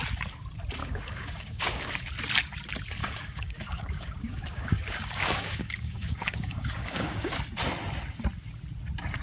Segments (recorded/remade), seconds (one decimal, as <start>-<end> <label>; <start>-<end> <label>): 0.0-0.8 recorded; 0.8-1.9 remade; 1.9-3.0 recorded; 3.0-7.3 remade; 7.3-9.2 recorded